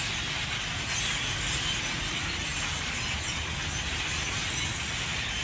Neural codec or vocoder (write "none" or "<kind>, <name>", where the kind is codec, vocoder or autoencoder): none